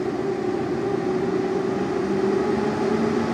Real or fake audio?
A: real